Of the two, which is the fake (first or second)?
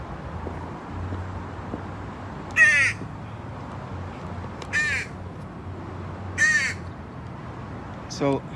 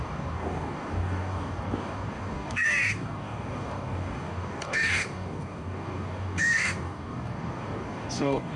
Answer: second